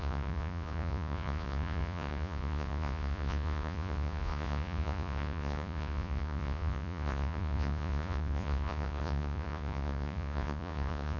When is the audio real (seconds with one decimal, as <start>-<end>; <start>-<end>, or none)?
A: none